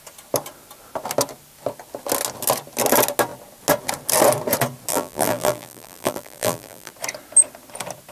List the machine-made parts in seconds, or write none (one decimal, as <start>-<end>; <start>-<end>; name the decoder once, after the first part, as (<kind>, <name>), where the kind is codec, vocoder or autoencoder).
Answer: 4.9-6.9 (vocoder, BigVGAN v2)